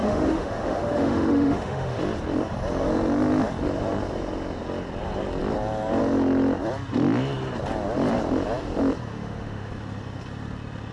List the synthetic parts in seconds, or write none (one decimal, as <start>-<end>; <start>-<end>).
0.0-2.0; 9.1-9.7